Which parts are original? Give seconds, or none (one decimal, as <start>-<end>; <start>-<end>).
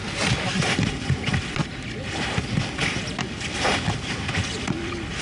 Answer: 0.0-5.2